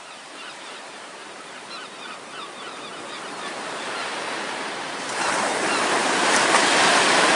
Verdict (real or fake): fake